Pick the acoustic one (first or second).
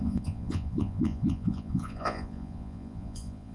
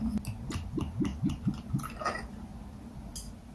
second